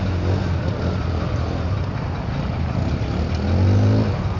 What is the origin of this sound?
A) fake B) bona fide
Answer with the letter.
B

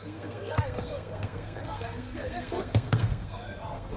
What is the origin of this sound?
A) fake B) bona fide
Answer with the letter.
A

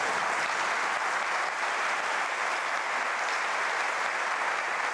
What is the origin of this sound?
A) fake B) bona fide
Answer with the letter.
B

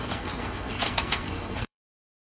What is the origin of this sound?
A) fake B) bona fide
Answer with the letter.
A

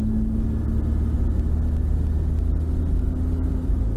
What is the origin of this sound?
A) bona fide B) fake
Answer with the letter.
A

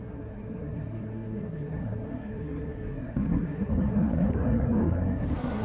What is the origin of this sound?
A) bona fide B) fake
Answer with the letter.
B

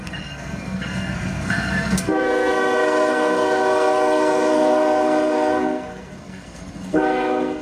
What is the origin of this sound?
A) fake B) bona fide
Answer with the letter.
A